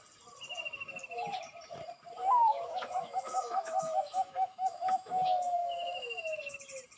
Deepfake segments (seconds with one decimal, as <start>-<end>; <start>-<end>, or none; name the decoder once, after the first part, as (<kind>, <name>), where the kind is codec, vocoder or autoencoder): 2.2-6.4 (autoencoder, DAC-VAE)